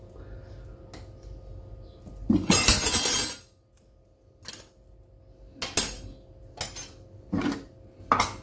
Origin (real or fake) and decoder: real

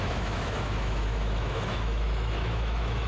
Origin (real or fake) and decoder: fake, autoencoder, DAC-VAE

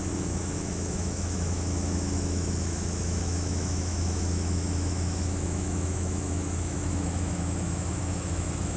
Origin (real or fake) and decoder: fake, autoencoder, DAC-VAE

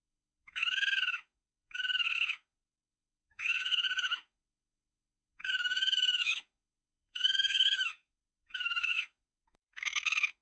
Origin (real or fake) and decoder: fake, autoencoder, DAC-VAE